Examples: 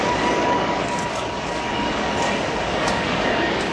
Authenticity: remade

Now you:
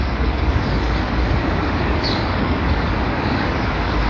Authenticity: remade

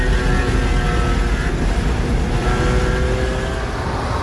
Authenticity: recorded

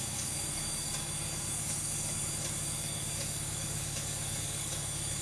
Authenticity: remade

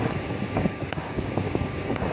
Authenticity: remade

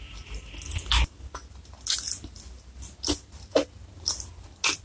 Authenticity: recorded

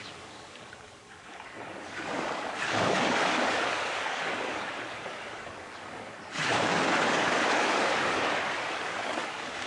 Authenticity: remade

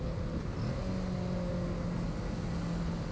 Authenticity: recorded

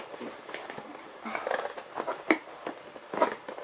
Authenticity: recorded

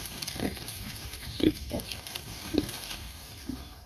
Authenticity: remade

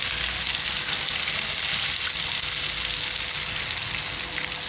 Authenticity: recorded